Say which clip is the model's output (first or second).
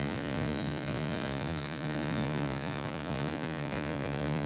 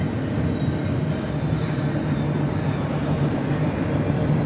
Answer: first